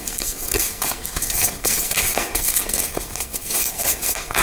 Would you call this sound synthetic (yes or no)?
yes